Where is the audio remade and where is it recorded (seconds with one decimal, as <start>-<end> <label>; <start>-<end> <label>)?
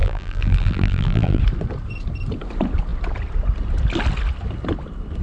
0.0-1.4 remade; 1.4-5.2 recorded